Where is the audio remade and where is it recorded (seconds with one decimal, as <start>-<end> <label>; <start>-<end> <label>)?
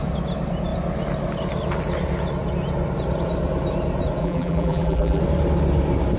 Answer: 0.0-4.2 recorded; 4.2-5.2 remade; 5.2-6.2 recorded